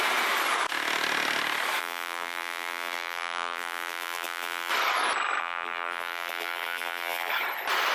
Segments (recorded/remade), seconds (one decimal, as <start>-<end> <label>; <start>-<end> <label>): 0.0-1.8 recorded; 1.8-4.7 remade; 4.7-5.4 recorded; 5.4-7.3 remade; 7.3-7.9 recorded